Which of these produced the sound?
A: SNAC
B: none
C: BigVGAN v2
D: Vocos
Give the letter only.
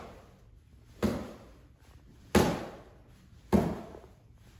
B